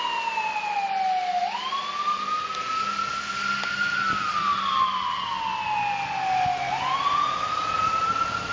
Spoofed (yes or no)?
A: no